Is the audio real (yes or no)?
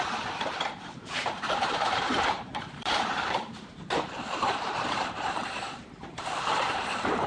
no